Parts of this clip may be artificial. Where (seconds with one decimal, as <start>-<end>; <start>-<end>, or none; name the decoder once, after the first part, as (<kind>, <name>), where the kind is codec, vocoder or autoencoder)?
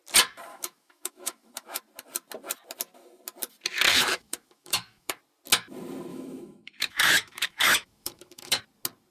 0.5-1.8 (autoencoder, DAC-VAE); 3.9-5.2; 6.1-8.6